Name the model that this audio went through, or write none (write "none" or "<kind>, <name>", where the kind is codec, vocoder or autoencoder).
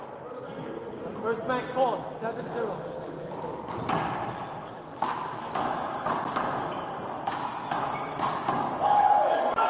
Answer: none